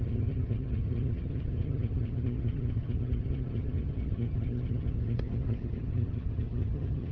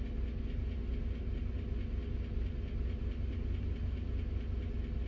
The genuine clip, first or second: second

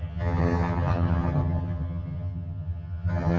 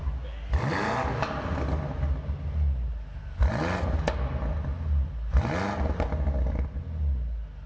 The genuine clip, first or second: second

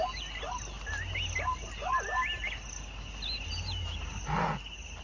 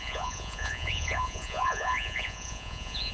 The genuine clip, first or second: first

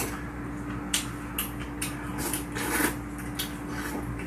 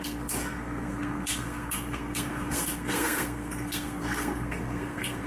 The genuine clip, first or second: first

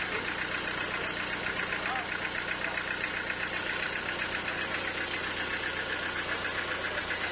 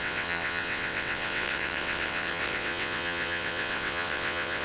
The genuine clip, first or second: first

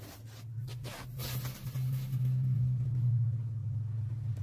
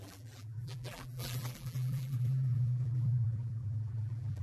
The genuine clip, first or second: first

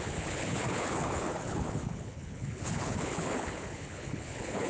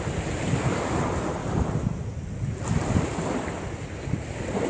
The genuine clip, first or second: second